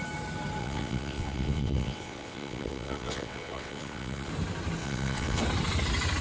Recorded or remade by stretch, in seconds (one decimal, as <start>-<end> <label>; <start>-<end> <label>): 0.0-0.6 recorded; 0.6-4.3 remade; 4.3-4.8 recorded; 4.8-5.4 remade; 5.4-6.2 recorded